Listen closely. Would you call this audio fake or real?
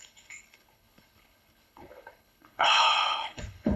fake